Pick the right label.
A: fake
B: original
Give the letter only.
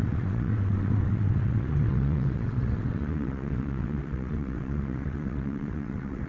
A